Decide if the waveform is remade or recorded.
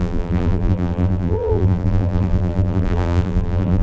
remade